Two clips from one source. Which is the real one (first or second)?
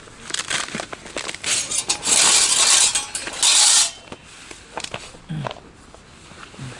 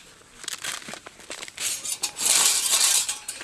first